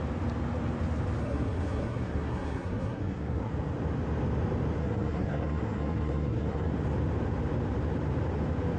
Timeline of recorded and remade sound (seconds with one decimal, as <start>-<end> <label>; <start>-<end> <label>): 0.0-1.2 recorded; 1.2-3.5 remade; 3.5-4.8 recorded; 4.8-6.7 remade; 6.7-8.8 recorded